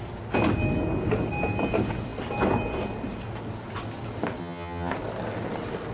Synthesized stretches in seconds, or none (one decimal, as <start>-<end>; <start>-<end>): 4.4-4.9